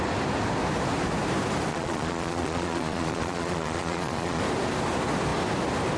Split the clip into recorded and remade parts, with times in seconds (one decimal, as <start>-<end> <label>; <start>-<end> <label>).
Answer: 0.0-1.7 recorded; 1.7-4.4 remade; 4.4-6.0 recorded